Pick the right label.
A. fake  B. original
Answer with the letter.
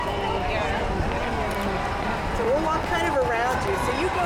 B